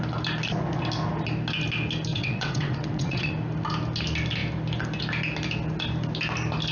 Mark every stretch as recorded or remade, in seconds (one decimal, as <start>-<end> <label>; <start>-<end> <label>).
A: 0.0-2.1 recorded; 2.1-3.3 remade; 3.3-6.7 recorded